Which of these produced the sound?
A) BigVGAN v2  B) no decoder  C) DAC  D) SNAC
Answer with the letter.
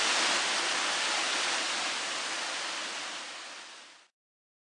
B